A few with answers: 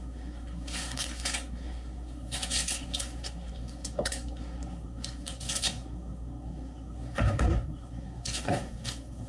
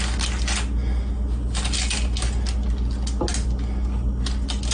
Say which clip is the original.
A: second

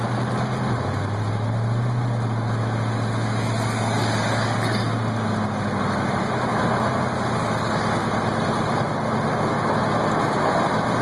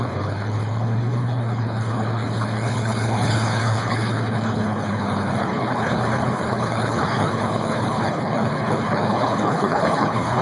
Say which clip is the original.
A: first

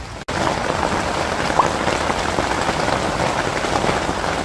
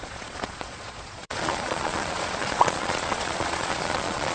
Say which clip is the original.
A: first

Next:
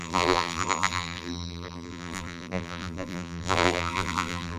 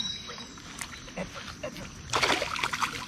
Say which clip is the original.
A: second